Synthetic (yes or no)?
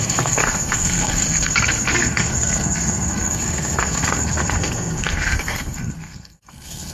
yes